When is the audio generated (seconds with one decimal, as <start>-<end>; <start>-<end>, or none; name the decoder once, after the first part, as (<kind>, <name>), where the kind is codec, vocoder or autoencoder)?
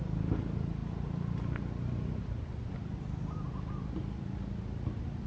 none